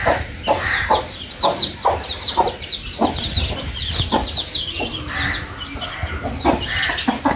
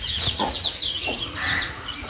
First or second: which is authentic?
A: first